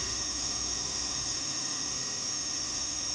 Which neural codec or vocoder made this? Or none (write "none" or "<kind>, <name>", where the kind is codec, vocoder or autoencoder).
autoencoder, DAC-VAE